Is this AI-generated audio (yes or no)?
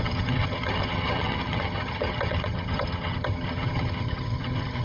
yes